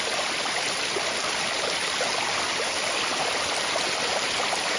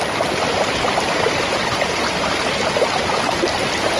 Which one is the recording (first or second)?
first